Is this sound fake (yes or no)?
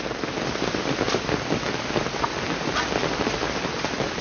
no